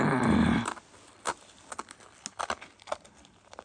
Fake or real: real